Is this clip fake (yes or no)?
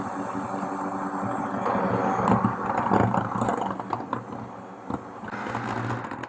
no